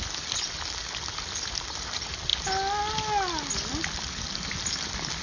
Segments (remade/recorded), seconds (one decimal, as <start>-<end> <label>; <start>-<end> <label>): 0.0-5.2 recorded